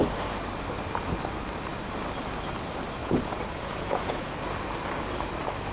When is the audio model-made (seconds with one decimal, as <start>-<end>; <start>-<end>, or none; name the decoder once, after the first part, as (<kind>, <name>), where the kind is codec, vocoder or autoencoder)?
3.0-4.3 (vocoder, Vocos)